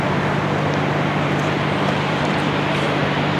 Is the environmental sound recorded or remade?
remade